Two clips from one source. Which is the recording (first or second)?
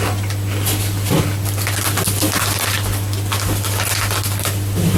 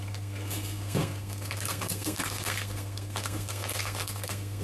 first